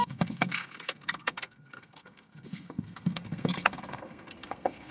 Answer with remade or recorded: remade